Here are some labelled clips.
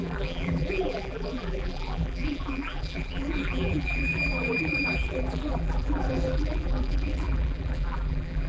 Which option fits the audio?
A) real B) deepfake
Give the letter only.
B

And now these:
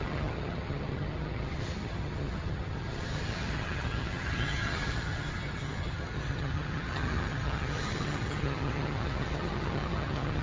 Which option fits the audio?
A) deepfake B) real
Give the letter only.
A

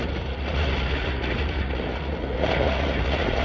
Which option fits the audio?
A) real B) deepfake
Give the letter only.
B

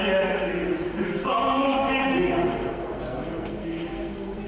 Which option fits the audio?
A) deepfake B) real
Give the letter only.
A